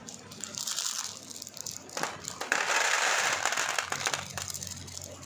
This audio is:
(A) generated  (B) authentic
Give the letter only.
B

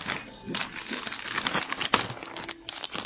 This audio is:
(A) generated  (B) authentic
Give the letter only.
B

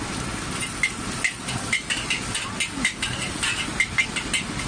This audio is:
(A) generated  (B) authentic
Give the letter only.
B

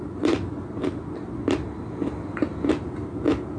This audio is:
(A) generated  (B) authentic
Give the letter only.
B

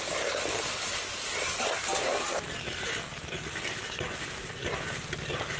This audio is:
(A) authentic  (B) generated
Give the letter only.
A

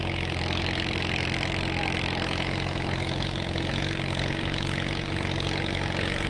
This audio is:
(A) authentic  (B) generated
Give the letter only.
B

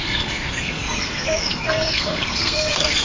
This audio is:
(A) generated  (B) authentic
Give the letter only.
A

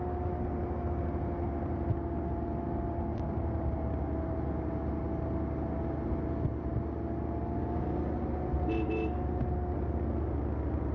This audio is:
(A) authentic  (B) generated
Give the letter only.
A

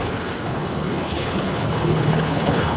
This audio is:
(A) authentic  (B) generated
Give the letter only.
B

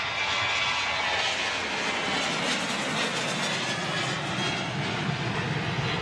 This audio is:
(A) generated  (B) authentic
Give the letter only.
B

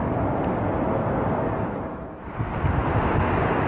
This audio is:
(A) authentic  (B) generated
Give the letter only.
A